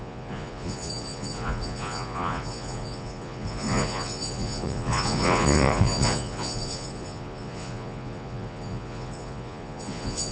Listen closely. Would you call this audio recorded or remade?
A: remade